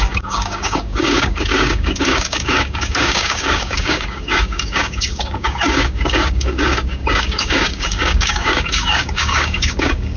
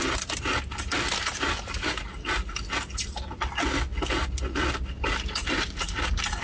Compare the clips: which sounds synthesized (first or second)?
first